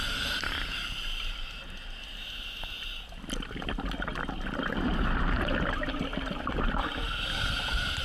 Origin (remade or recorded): recorded